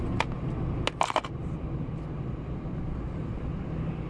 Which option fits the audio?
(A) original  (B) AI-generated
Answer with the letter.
A